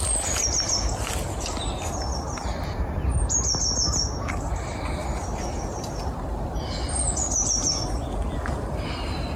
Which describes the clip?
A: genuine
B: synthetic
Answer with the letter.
A